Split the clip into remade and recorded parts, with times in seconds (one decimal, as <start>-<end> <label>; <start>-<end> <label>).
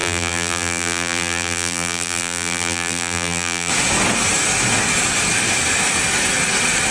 0.0-3.7 remade; 3.7-6.9 recorded